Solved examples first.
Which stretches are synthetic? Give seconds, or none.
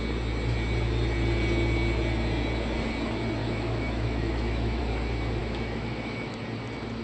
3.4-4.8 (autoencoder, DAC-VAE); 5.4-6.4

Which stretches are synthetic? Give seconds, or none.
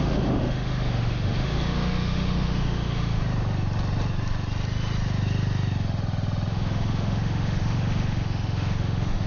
0.0-3.2 (autoencoder, DAC-VAE); 6.5-9.3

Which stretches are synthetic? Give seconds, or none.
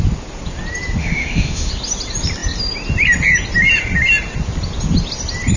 1.0-1.7 (autoencoder, DAC-VAE)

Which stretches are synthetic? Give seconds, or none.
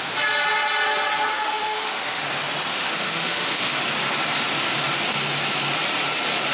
1.3-2.2 (autoencoder, DAC-VAE); 2.7-3.8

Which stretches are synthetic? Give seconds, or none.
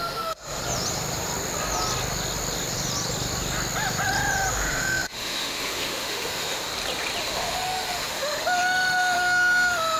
0.0-0.6 (autoencoder, DAC-VAE); 4.5-6.7; 7.2-10.0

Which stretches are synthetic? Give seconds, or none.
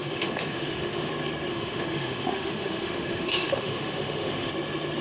0.0-1.1 (autoencoder, DAC-VAE); 1.5-4.5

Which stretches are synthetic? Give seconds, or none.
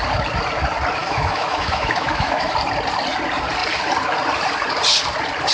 1.0-2.5 (autoencoder, DAC-VAE)